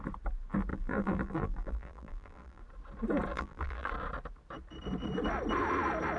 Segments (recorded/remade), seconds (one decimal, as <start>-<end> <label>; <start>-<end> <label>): 0.0-0.7 recorded; 0.7-2.6 remade; 2.6-3.3 recorded; 3.3-3.9 remade; 3.9-6.2 recorded